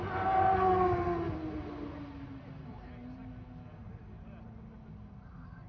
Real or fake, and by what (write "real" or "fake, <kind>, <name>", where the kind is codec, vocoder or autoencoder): real